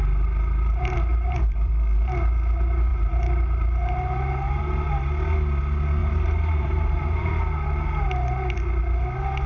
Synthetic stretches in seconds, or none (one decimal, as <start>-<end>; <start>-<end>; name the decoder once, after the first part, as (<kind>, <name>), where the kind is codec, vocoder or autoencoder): 1.1-1.7 (vocoder, BigVGAN v2); 2.9-4.9; 6.0-7.3